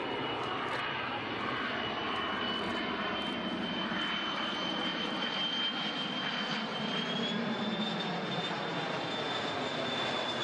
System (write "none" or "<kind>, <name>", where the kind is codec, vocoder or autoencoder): none